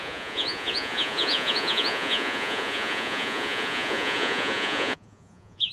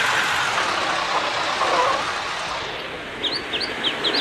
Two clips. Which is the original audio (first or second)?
second